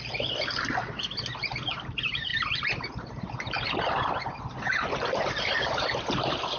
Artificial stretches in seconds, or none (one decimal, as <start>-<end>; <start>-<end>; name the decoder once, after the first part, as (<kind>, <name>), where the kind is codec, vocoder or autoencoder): none